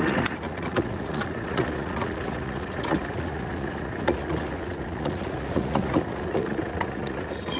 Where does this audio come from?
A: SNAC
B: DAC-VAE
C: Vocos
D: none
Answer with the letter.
C